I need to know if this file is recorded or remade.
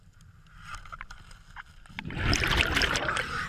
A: recorded